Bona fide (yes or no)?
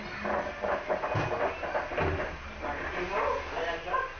yes